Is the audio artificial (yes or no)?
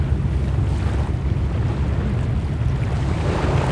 no